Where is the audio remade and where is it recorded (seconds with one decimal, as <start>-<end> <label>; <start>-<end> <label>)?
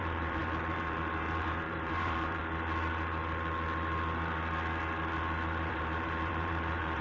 0.0-2.4 remade; 2.4-5.7 recorded; 5.7-7.0 remade